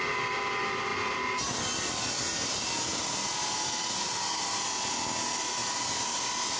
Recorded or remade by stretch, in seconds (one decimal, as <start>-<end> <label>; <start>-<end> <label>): 0.0-6.6 recorded